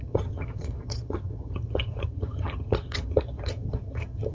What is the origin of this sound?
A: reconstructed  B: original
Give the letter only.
A